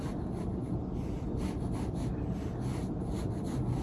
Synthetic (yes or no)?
no